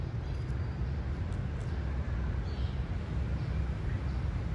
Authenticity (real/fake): real